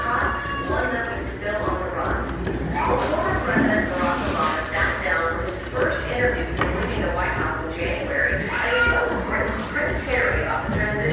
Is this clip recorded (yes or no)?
yes